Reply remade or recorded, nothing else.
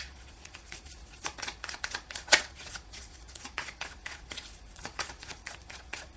remade